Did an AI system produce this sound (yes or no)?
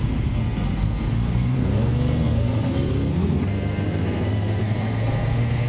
yes